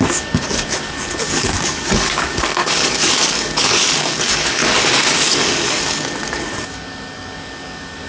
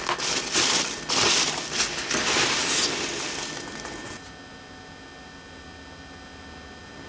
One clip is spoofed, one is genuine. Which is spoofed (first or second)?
first